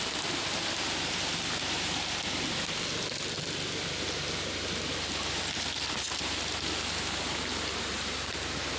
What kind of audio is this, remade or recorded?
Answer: recorded